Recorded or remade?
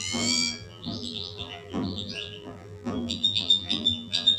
remade